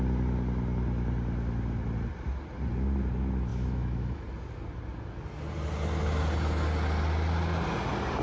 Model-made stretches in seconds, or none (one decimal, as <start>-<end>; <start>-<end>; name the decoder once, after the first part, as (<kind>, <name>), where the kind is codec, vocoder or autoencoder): 3.5-4.2 (autoencoder, DAC-VAE)